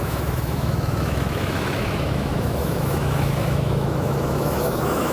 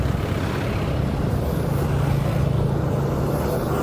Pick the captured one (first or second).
second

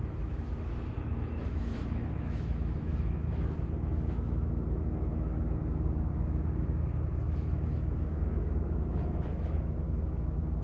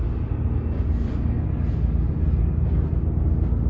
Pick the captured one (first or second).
second